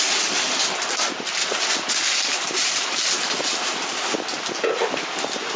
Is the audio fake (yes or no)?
no